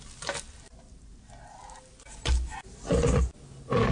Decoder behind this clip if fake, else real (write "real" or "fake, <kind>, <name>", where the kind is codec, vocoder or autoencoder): real